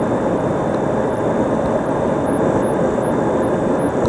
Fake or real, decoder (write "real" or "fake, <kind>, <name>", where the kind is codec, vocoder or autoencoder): real